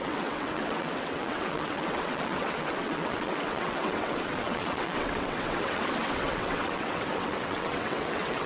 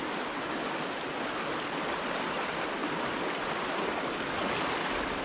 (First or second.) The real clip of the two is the second